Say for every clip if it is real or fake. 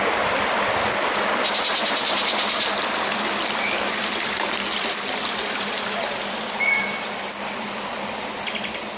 real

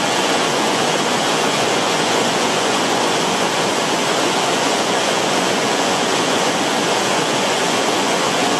fake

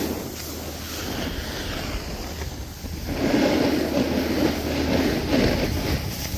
real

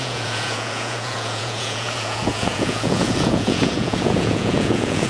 fake